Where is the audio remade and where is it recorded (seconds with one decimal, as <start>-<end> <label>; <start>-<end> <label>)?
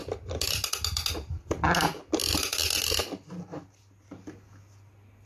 0.0-5.3 recorded